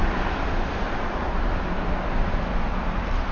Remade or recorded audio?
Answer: recorded